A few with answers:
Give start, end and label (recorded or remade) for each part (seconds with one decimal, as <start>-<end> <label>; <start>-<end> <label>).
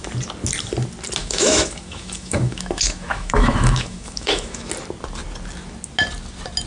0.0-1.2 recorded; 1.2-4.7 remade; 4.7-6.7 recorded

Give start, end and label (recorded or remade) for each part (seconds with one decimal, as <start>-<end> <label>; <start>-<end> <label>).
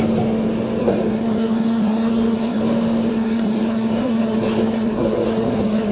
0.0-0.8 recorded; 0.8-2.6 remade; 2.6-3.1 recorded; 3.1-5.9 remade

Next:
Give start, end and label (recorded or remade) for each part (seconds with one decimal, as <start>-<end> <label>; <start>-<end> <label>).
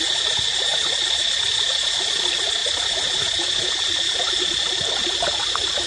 0.0-5.9 recorded